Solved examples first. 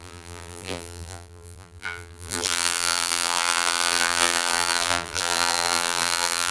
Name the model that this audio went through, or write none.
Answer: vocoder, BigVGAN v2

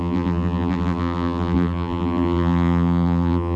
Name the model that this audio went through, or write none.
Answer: vocoder, BigVGAN v2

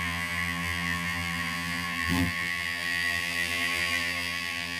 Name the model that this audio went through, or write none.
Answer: vocoder, BigVGAN v2